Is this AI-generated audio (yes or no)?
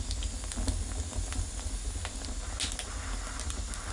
no